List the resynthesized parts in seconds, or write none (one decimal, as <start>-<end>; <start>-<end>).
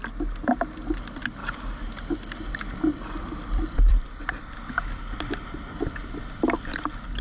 2.9-4.7